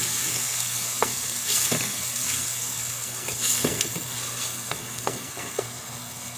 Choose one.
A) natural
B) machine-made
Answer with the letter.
B